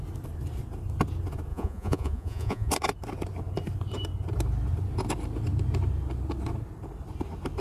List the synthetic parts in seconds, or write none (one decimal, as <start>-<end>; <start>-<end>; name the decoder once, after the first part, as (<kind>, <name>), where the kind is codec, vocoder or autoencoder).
1.5-2.7 (vocoder, Vocos)